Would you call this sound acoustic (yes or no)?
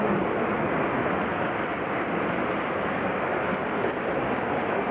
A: yes